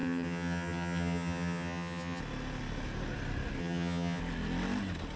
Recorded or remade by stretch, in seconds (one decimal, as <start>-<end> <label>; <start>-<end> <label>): 0.0-2.2 remade; 2.2-3.6 recorded; 3.6-4.2 remade; 4.2-5.2 recorded